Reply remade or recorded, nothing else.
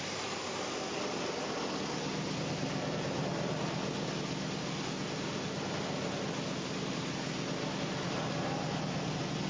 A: recorded